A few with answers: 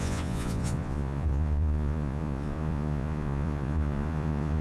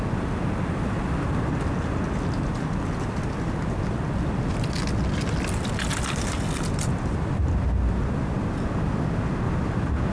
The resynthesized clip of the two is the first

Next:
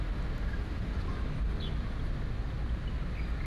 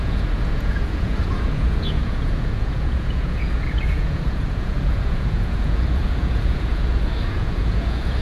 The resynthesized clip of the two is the second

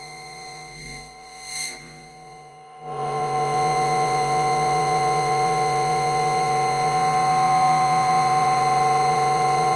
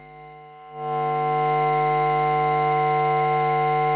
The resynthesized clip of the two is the first